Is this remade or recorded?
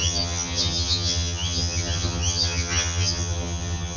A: remade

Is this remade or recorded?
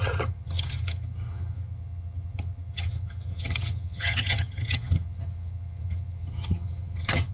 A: remade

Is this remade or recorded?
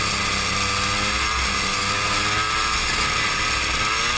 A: recorded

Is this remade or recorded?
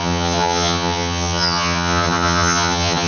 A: remade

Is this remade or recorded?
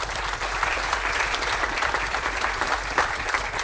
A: recorded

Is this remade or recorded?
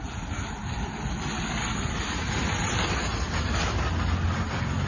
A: recorded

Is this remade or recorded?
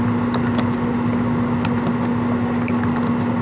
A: recorded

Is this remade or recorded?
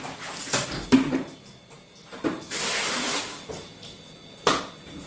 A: recorded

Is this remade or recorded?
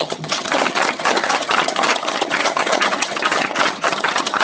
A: remade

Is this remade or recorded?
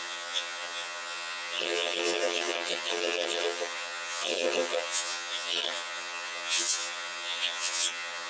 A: remade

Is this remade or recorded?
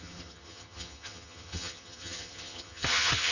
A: remade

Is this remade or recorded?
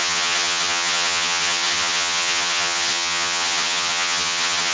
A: remade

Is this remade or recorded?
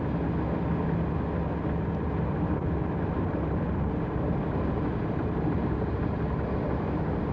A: recorded